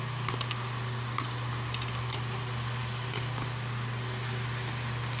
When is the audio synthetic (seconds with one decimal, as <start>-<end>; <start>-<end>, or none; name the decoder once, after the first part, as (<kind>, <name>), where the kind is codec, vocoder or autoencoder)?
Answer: none